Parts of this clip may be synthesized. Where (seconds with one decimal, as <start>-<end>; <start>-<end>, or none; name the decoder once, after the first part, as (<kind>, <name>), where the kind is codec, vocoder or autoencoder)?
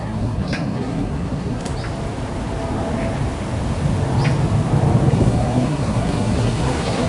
0.0-1.7 (codec, SNAC); 5.1-7.1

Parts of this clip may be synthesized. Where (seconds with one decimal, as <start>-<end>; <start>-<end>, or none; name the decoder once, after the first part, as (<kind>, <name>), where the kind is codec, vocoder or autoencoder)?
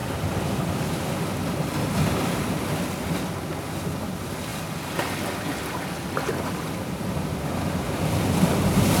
none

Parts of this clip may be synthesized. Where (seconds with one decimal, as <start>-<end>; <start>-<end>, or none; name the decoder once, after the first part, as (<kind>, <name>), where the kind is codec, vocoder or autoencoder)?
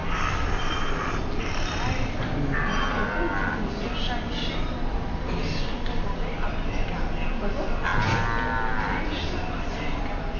none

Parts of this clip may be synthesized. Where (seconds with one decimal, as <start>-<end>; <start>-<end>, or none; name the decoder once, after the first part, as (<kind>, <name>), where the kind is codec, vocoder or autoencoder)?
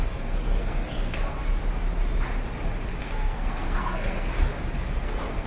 0.0-1.4 (codec, SNAC); 3.0-4.3; 5.0-5.5